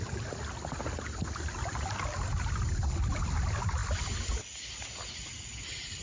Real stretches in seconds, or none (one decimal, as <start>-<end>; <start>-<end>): 0.0-6.0